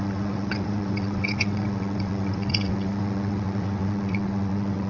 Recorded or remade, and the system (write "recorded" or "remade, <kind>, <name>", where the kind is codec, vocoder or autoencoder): remade, vocoder, WaveNeXt